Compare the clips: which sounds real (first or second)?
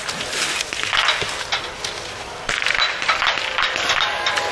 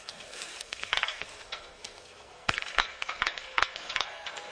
first